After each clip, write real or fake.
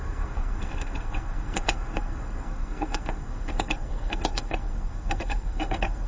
fake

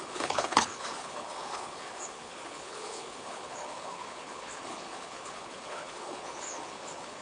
fake